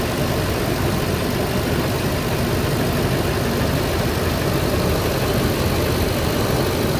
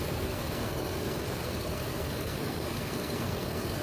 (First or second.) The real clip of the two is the first